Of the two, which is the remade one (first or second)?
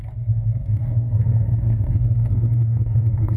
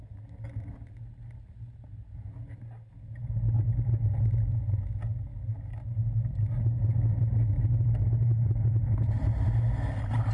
first